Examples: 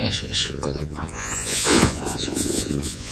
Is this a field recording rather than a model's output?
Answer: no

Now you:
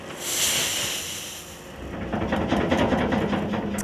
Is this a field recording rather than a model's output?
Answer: yes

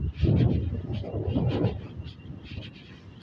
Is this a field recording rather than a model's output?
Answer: yes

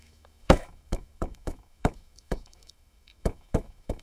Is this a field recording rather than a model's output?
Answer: no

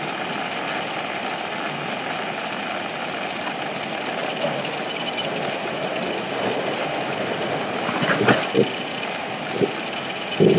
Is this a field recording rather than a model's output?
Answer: yes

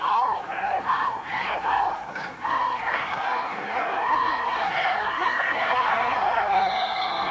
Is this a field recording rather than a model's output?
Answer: no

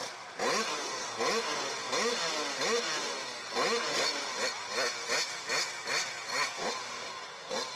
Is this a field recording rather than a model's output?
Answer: yes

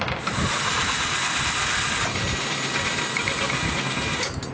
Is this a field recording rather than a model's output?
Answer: yes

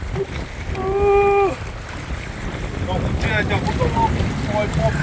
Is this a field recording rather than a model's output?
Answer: yes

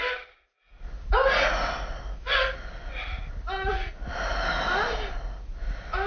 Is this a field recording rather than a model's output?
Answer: yes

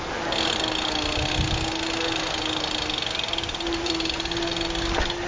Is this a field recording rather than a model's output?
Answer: yes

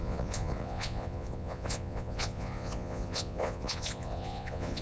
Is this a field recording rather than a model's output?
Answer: no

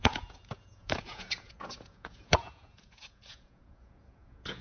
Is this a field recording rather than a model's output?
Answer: no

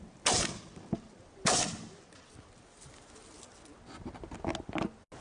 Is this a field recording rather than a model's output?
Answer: yes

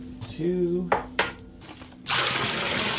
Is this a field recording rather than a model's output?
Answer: yes